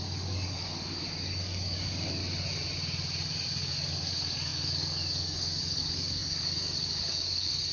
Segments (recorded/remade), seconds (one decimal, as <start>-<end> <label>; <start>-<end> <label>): 0.0-2.2 remade; 2.2-3.6 recorded; 3.6-7.7 remade